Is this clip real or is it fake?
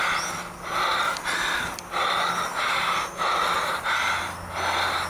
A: real